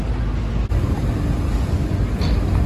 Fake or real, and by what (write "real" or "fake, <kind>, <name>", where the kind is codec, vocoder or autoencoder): real